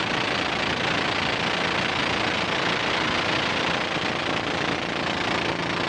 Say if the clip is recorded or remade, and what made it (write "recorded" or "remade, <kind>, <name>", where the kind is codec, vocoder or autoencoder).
recorded